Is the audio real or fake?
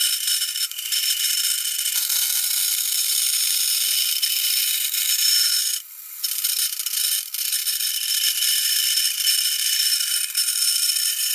fake